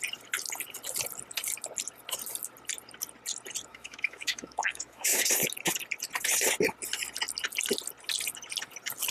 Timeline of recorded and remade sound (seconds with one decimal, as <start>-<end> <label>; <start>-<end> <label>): 0.0-3.7 recorded; 3.7-5.2 remade; 5.2-9.1 recorded